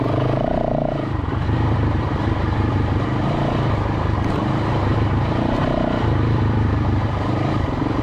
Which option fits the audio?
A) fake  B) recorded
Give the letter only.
A